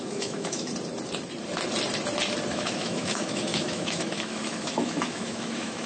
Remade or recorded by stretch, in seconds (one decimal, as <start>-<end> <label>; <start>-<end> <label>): 0.0-0.7 remade; 0.7-2.5 recorded; 2.5-5.9 remade